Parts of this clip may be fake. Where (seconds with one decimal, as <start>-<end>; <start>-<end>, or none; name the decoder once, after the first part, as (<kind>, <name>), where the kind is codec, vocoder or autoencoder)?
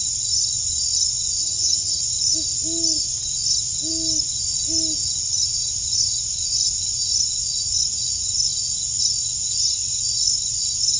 1.4-2.0 (vocoder, HiFi-GAN)